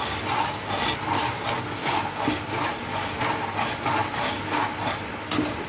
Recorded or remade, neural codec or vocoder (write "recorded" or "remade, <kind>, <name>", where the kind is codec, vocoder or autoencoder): recorded